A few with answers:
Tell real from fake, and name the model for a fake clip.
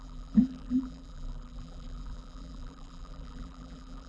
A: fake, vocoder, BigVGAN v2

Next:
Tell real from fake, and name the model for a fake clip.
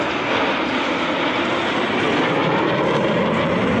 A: real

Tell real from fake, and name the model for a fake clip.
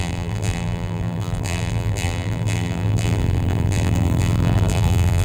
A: fake, vocoder, BigVGAN v2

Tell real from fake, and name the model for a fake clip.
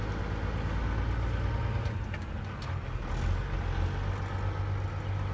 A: real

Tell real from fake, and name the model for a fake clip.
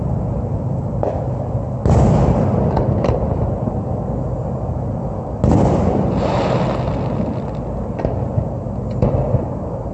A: real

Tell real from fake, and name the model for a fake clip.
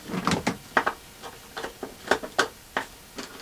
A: real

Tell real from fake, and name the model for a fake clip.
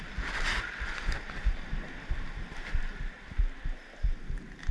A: real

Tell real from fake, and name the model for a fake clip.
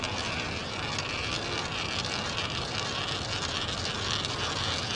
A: fake, vocoder, BigVGAN v2